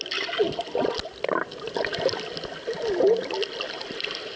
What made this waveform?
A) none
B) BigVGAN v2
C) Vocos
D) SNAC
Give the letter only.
A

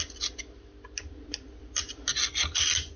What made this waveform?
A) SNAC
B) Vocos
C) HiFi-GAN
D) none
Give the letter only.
D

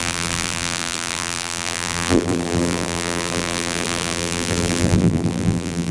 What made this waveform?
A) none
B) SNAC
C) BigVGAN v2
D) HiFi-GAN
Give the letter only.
C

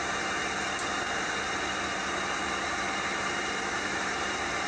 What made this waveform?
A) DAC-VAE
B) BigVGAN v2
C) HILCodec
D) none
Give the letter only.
D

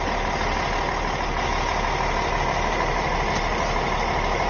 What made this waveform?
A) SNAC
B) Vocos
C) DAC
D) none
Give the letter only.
D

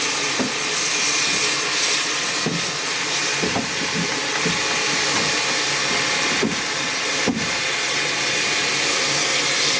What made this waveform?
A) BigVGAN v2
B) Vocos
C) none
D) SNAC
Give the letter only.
C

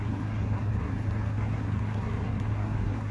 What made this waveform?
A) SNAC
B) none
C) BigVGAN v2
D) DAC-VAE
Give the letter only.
A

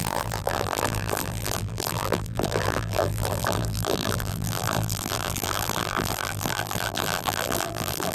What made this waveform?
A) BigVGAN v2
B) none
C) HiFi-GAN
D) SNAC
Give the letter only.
A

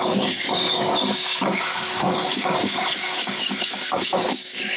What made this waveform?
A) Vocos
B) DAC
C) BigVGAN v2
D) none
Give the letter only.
B